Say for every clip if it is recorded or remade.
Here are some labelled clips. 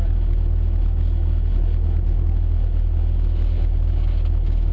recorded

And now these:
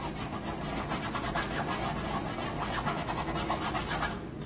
recorded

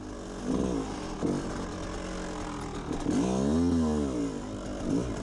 recorded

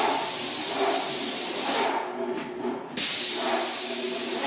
recorded